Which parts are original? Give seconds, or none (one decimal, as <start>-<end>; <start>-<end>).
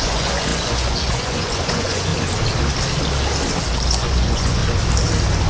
2.1-3.9; 4.6-5.5